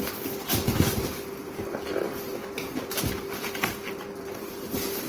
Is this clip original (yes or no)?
yes